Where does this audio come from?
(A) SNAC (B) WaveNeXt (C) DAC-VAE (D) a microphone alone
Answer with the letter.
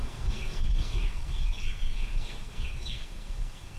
A